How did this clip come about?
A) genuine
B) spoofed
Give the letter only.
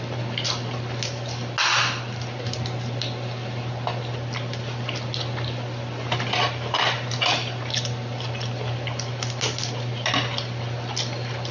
A